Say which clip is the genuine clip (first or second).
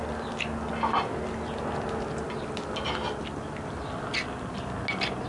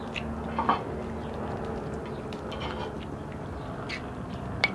first